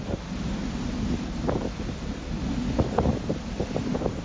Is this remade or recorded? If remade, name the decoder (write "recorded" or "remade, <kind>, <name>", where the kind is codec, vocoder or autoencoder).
recorded